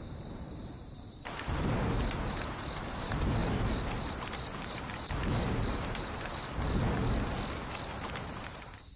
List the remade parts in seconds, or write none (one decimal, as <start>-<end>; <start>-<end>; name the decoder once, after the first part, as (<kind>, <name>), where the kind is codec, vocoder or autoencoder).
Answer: 0.0-6.4 (vocoder, BigVGAN v2); 7.9-9.0